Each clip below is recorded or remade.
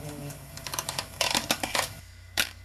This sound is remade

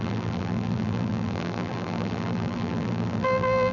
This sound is remade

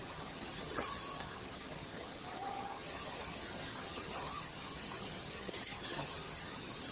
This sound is remade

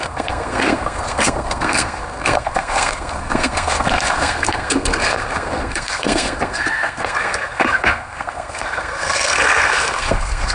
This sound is remade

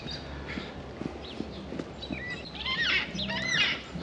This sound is recorded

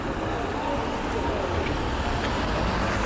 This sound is recorded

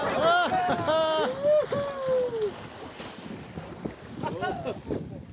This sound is recorded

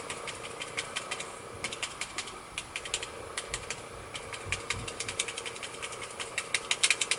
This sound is recorded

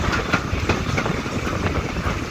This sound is remade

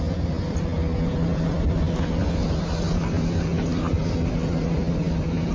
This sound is recorded